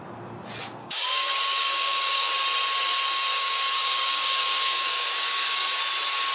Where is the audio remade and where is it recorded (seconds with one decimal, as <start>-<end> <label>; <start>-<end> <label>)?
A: 0.0-0.8 recorded; 0.8-2.3 remade; 2.3-3.4 recorded; 3.4-5.8 remade; 5.8-6.3 recorded